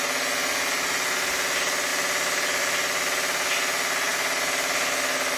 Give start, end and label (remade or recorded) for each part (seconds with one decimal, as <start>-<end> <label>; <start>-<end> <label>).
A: 0.0-5.4 recorded